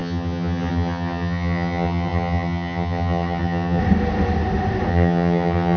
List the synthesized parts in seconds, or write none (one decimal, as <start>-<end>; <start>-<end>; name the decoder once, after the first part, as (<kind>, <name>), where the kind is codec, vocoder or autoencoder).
0.0-3.8 (vocoder, HiFi-GAN); 4.9-5.8